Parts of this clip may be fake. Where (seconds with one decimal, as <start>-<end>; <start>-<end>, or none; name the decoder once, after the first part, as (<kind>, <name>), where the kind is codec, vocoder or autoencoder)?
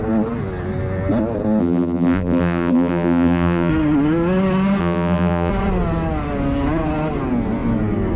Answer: 1.6-3.7 (vocoder, BigVGAN v2); 4.8-5.5